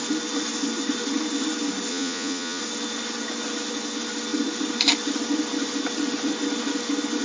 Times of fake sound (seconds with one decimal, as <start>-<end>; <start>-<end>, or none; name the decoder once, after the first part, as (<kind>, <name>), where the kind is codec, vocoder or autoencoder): 1.9-2.6 (vocoder, Vocos)

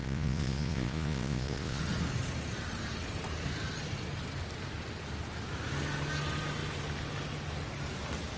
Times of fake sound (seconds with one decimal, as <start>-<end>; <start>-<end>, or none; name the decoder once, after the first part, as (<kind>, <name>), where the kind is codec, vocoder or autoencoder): 0.0-1.8 (vocoder, Vocos)

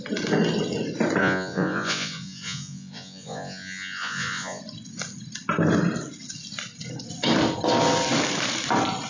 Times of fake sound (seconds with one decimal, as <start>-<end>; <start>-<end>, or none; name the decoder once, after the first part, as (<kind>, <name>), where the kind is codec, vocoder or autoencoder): 1.2-4.6 (vocoder, Vocos)

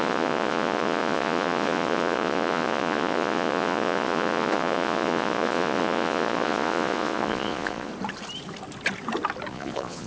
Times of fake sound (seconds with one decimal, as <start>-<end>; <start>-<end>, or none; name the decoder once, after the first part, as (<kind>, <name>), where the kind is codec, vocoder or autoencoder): 0.0-7.9 (vocoder, Vocos); 9.5-10.1